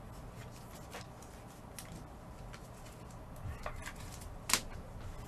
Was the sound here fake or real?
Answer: real